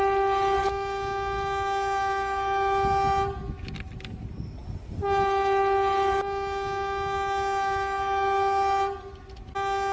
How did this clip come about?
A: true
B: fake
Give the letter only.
A